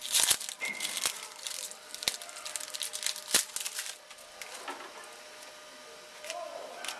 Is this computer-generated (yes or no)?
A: no